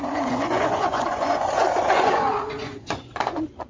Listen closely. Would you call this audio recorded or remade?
remade